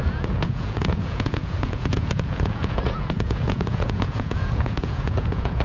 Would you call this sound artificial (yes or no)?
yes